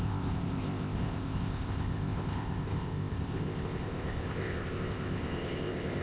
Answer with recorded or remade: remade